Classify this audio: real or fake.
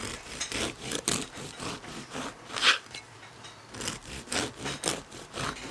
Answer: real